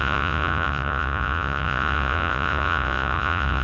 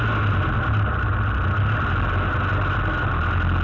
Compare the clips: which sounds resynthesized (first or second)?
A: first